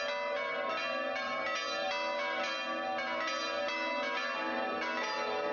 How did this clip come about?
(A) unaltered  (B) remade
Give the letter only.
A